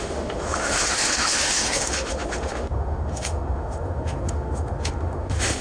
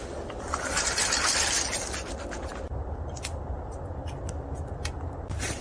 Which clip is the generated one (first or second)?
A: first